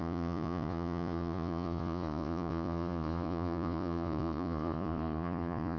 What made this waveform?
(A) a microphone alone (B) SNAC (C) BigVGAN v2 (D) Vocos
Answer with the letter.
D